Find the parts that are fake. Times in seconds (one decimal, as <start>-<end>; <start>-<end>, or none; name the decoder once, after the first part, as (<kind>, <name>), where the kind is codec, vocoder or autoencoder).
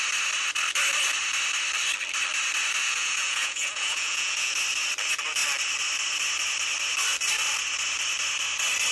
2.8-4.5 (vocoder, Vocos)